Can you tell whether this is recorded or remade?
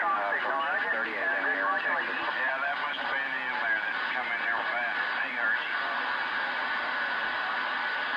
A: recorded